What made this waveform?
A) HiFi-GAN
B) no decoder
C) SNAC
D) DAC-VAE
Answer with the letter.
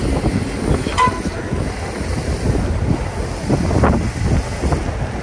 B